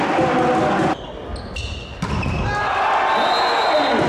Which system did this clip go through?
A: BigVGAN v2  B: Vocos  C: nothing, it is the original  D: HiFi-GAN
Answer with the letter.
C